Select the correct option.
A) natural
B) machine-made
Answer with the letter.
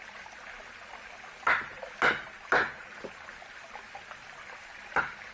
A